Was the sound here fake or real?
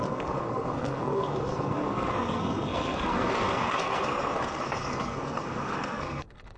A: fake